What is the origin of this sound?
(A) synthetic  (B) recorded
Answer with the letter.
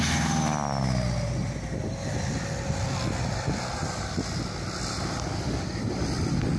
B